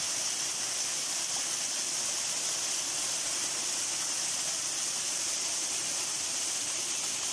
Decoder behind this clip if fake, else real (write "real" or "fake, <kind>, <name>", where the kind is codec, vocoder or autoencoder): real